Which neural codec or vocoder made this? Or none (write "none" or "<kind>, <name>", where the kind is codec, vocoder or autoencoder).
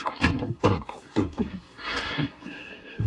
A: codec, SNAC